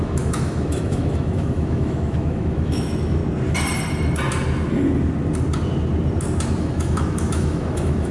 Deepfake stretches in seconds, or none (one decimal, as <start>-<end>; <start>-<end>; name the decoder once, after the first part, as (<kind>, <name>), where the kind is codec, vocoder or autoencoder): 0.0-3.2 (autoencoder, DAC-VAE); 6.6-8.1